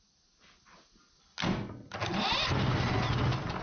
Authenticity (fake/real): real